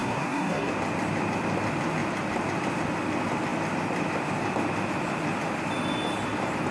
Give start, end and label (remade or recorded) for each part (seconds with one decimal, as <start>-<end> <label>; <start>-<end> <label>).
0.0-0.7 remade; 0.7-6.7 recorded